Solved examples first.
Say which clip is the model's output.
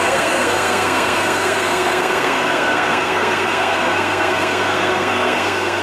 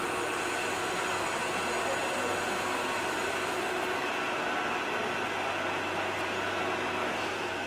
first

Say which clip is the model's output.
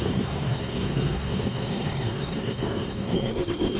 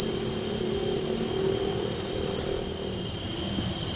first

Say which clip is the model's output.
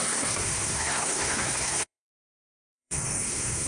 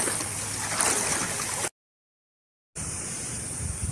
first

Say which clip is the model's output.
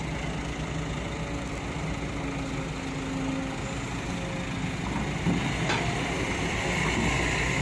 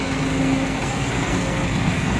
second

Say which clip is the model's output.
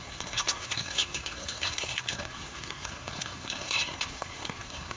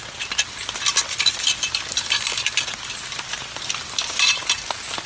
first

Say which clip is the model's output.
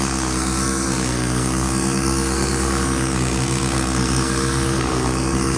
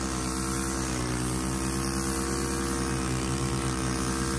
first